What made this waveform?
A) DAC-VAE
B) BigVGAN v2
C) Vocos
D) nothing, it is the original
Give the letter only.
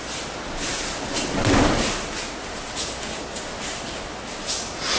D